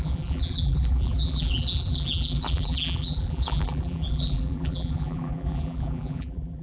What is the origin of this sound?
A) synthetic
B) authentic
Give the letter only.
A